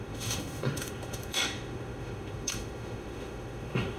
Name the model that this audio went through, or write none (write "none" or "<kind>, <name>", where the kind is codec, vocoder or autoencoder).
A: autoencoder, DAC-VAE